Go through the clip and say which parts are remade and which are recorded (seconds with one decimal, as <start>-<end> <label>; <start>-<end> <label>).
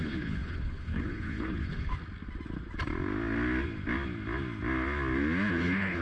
0.0-1.9 remade; 1.9-5.5 recorded; 5.5-6.0 remade